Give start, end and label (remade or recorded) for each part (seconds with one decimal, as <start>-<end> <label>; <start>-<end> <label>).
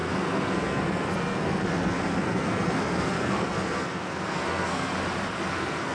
0.0-4.9 remade; 4.9-5.5 recorded; 5.5-5.9 remade